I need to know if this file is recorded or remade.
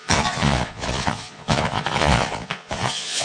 remade